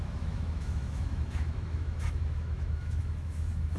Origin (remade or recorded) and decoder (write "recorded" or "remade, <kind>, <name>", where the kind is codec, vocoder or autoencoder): remade, autoencoder, DAC-VAE